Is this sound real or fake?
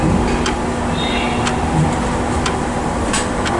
real